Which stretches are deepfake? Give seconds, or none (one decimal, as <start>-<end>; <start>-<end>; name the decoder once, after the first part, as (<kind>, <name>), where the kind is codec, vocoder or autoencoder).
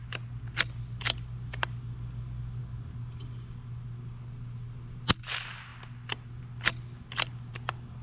none